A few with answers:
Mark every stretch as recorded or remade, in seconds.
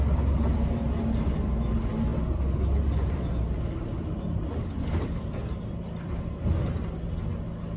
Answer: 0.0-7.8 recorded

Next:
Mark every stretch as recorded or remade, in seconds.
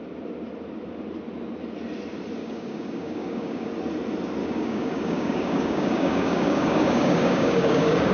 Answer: 0.0-2.4 recorded; 2.4-3.7 remade; 3.7-4.4 recorded; 4.4-8.1 remade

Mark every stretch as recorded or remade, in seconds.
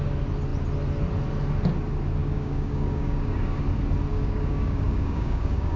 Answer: 0.0-2.2 recorded; 2.2-3.6 remade; 3.6-4.1 recorded; 4.1-5.8 remade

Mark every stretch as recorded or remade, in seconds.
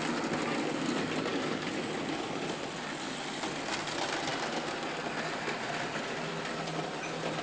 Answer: 0.0-1.3 recorded; 1.3-1.8 remade; 1.8-7.4 recorded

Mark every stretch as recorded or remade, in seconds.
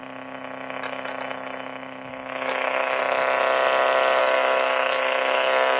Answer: 0.0-2.1 recorded; 2.1-3.0 remade; 3.0-4.2 recorded; 4.2-5.8 remade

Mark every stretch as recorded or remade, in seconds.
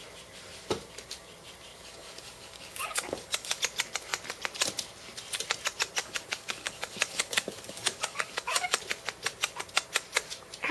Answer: 0.0-1.7 recorded; 1.7-3.6 remade; 3.6-6.0 recorded; 6.0-8.8 remade; 8.8-10.7 recorded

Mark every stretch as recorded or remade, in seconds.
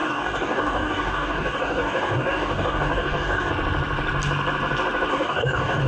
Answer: 0.0-3.5 remade; 3.5-5.1 recorded; 5.1-5.9 remade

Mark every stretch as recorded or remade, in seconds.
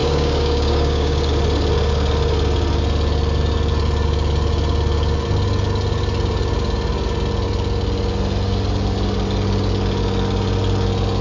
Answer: 0.0-1.3 remade; 1.3-11.2 recorded